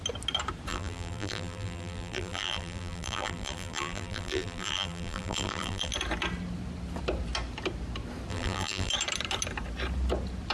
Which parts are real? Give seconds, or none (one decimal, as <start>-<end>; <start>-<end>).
0.0-0.7; 5.9-8.3; 8.9-10.5